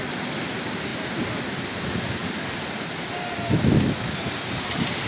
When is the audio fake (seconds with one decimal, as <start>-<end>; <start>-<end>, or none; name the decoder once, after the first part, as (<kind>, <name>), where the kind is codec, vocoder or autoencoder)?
none